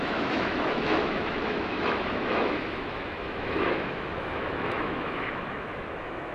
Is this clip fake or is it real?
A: fake